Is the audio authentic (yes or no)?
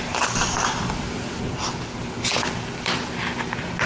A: yes